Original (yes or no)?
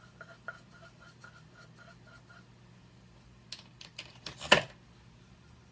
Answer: yes